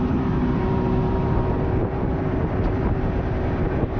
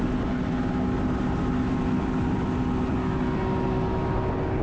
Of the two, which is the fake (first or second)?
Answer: first